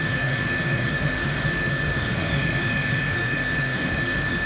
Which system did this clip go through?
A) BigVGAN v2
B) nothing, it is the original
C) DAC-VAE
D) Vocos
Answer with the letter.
C